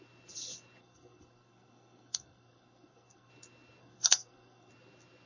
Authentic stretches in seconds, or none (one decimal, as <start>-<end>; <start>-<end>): 0.0-0.8; 3.3-3.8; 4.7-5.3